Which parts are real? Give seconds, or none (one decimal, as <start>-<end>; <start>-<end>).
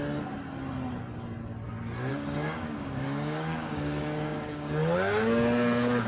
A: 0.0-2.1